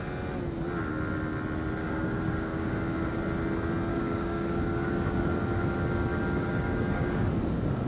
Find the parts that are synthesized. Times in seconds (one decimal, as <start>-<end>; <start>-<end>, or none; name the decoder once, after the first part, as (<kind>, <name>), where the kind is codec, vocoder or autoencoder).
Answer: 1.8-3.2 (codec, DAC); 3.9-5.6; 6.1-7.4